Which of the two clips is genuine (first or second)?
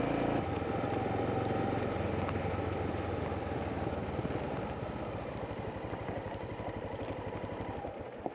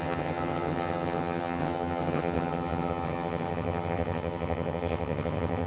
first